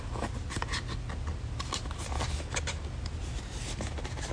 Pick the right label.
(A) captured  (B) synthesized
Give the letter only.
A